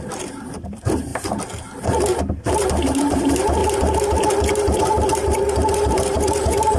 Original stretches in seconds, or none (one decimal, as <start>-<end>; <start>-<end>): 1.1-2.5; 3.6-4.5